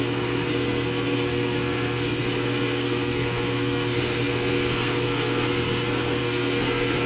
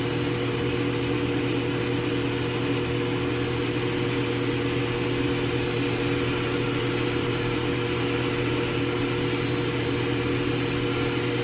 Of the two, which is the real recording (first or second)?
second